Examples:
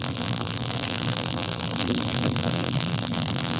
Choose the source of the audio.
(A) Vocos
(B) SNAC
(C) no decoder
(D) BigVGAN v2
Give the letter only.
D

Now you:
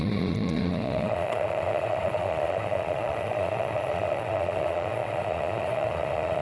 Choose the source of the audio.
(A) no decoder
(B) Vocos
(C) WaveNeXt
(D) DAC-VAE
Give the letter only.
B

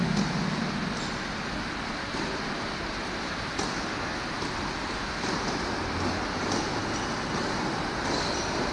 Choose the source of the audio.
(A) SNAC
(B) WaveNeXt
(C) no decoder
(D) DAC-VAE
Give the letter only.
C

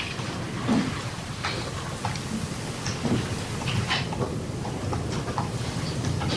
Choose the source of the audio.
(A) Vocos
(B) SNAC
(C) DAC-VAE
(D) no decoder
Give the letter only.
D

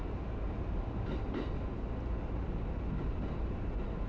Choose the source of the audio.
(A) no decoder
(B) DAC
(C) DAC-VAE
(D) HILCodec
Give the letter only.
A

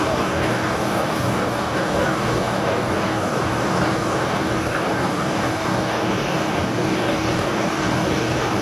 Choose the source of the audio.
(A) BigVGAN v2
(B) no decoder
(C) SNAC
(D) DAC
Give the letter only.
D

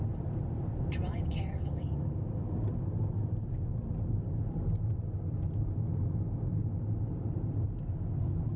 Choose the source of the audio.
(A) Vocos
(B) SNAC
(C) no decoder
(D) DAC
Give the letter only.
C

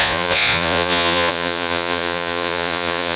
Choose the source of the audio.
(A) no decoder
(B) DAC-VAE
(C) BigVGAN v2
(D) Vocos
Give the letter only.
D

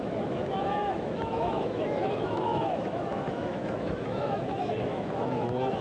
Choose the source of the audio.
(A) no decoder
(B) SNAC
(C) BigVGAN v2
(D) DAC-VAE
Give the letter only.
D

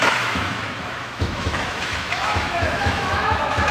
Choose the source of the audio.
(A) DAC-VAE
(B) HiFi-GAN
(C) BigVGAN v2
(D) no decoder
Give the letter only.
A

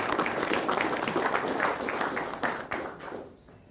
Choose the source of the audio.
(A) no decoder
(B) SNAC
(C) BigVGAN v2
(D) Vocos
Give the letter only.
A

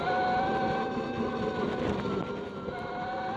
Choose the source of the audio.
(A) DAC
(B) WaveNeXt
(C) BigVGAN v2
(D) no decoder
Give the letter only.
D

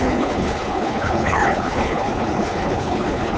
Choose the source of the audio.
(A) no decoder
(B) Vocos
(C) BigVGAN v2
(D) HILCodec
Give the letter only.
D